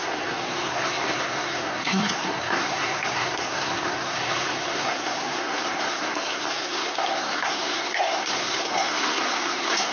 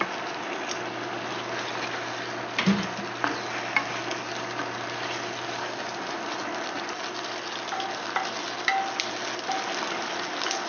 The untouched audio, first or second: second